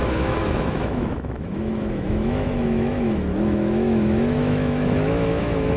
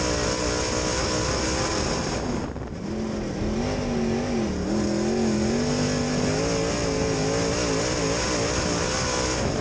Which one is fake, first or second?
first